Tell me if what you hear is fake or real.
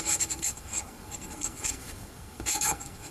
fake